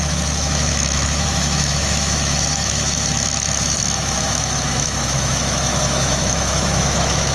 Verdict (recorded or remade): remade